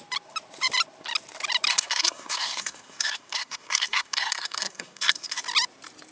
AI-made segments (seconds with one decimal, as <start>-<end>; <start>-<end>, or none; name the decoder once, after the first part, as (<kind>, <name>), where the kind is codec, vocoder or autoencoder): 1.7-5.4 (codec, SNAC)